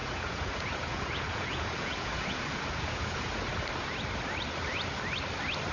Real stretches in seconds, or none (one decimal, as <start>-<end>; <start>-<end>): 3.4-5.7